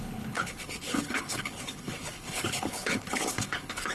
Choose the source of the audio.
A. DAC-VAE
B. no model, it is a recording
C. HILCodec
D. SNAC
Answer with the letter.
C